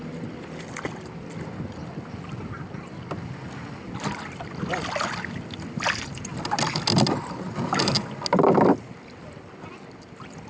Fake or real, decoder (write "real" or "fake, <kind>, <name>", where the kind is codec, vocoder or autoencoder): real